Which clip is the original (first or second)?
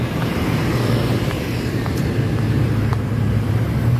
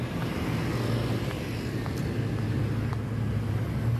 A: second